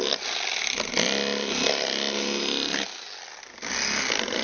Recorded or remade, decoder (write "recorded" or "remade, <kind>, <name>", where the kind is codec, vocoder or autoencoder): recorded